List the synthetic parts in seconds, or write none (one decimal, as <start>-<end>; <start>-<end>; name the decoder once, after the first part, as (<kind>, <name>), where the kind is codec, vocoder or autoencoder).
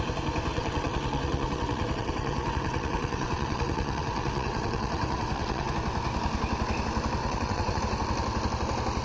0.5-5.7 (vocoder, WaveNeXt); 7.2-7.8